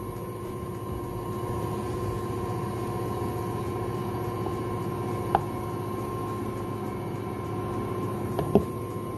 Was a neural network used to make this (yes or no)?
no